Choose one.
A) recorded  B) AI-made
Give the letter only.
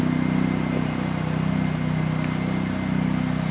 A